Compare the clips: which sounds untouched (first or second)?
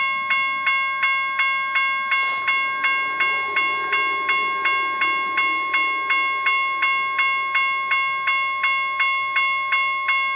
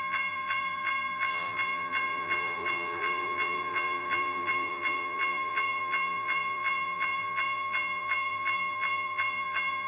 first